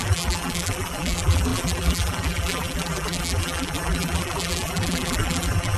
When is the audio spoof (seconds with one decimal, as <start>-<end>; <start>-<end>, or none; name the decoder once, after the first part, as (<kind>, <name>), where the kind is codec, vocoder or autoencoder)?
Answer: 0.0-5.8 (vocoder, BigVGAN v2)